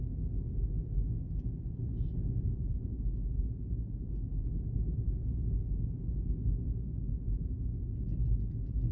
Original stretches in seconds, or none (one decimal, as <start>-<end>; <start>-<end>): 0.0-8.9